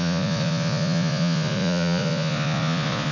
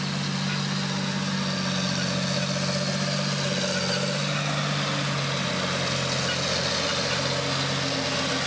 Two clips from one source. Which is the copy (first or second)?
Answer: first